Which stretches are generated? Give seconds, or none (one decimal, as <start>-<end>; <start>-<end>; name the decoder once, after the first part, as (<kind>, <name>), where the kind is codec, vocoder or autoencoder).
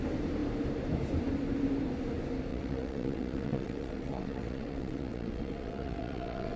2.5-6.6 (vocoder, WaveNeXt)